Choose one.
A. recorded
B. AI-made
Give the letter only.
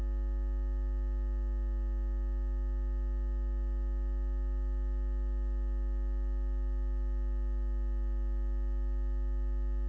A